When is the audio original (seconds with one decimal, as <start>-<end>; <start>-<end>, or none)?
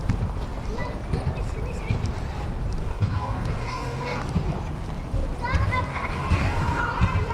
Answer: 0.0-2.8; 4.2-5.9; 6.8-7.3